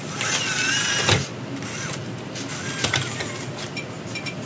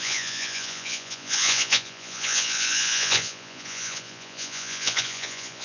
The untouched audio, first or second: first